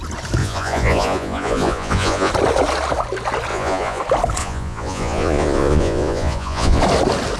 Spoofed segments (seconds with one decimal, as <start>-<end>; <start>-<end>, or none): 0.4-2.3; 3.5-4.0; 4.4-6.8